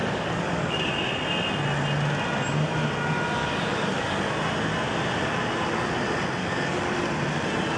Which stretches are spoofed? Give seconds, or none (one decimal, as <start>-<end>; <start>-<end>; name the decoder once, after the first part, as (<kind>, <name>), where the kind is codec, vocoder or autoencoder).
0.0-0.9 (codec, DAC); 3.4-4.3; 6.4-6.9